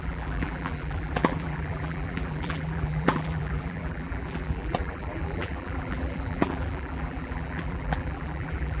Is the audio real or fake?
fake